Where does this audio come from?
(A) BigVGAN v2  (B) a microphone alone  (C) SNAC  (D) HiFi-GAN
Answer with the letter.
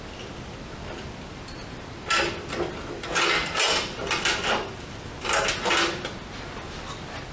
B